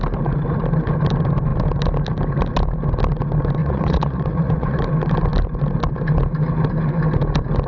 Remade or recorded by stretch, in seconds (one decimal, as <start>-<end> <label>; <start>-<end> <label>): 0.0-3.6 recorded; 3.6-4.8 remade; 4.8-7.7 recorded